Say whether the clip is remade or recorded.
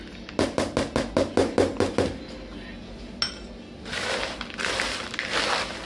recorded